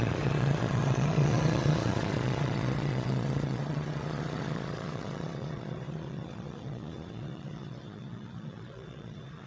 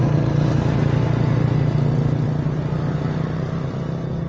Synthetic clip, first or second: first